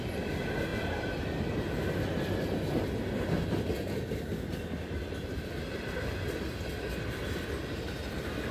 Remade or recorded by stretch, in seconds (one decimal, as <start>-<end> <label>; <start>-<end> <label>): 0.0-8.5 recorded